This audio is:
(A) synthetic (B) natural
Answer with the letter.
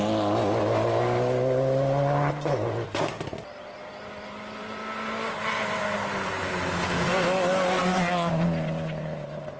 B